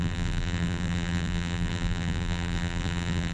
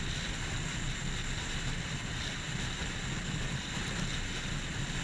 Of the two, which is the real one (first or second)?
second